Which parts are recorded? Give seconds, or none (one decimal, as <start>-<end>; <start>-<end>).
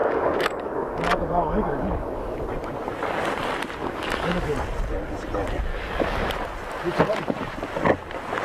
2.4-3.8; 4.5-5.7; 6.3-8.4